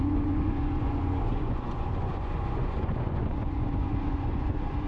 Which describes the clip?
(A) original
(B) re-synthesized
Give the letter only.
B